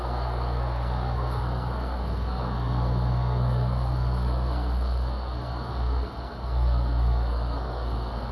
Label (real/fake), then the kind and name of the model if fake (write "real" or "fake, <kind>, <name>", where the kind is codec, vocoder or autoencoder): fake, codec, SNAC